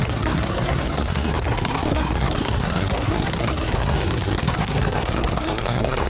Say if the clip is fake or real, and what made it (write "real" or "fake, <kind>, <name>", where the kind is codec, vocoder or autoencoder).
fake, codec, SNAC